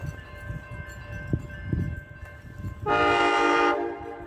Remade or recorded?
recorded